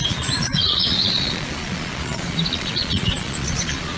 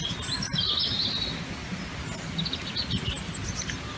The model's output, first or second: first